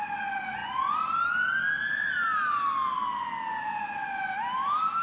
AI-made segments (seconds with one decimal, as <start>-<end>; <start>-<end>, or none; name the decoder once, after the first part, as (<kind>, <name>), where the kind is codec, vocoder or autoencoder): none